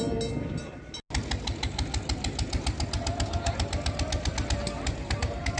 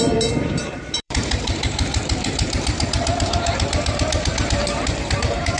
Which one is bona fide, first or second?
first